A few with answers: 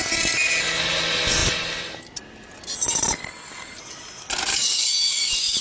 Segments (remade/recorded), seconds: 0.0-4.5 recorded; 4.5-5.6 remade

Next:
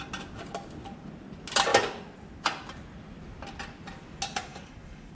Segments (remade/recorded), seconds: 0.0-4.5 recorded; 4.5-5.1 remade

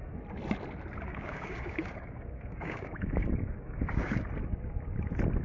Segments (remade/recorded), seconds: 0.0-1.1 recorded; 1.1-4.3 remade; 4.3-5.4 recorded

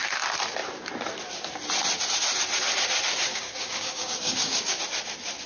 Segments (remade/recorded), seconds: 0.0-3.3 recorded; 3.3-4.8 remade; 4.8-5.5 recorded